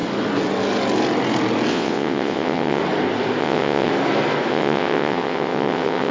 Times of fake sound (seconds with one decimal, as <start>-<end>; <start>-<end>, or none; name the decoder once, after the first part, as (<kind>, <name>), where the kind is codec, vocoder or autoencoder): 1.7-2.8 (vocoder, WaveNeXt); 3.4-3.9; 4.5-6.1

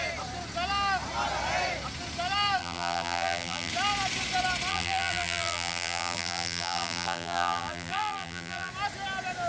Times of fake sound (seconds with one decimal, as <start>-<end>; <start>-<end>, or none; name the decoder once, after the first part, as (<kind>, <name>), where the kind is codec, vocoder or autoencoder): 2.6-3.7 (vocoder, BigVGAN v2); 4.7-8.7

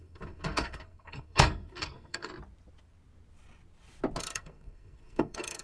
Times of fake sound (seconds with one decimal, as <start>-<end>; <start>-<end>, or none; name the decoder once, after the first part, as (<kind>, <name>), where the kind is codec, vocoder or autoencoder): 0.0-2.3 (codec, SNAC); 4.2-5.6

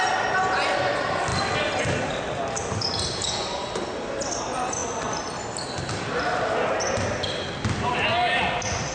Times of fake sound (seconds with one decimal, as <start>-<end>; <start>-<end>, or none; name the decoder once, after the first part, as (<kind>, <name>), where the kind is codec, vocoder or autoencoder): none

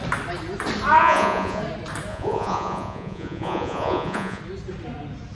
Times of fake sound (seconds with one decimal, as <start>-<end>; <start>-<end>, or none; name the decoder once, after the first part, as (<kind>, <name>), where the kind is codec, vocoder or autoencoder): 1.0-1.6 (vocoder, Vocos); 2.1-4.4